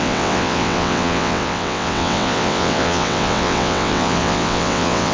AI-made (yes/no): yes